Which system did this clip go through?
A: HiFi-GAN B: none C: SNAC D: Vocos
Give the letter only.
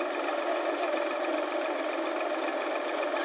B